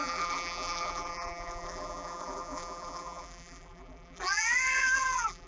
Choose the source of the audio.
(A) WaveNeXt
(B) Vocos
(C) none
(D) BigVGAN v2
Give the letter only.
D